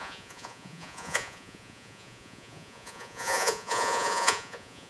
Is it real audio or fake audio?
fake